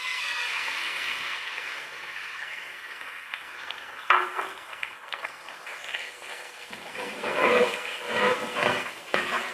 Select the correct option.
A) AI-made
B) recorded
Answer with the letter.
A